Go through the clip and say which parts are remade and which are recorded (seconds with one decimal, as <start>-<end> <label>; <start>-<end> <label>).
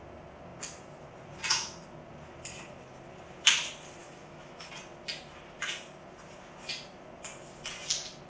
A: 0.0-4.0 recorded; 4.0-4.7 remade; 4.7-8.3 recorded